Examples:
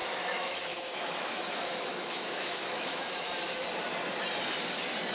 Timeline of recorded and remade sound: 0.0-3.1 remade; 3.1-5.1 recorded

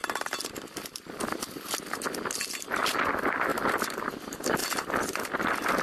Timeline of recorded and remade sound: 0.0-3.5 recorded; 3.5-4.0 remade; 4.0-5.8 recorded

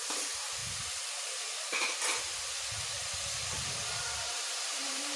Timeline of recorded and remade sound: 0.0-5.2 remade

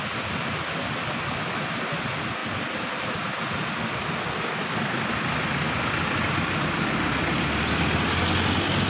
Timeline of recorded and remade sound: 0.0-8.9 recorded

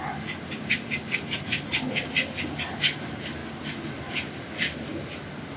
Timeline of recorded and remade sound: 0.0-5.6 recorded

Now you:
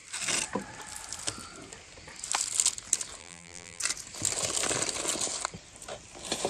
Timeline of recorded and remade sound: 0.0-3.2 recorded; 3.2-3.8 remade; 3.8-6.5 recorded